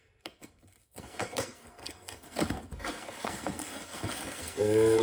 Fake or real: fake